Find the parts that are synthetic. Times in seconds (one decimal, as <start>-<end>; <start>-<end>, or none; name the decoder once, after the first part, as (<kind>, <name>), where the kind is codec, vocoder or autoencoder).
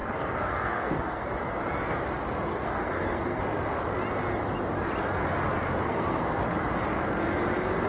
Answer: 0.0-1.3 (codec, SNAC); 2.5-3.4; 5.8-6.4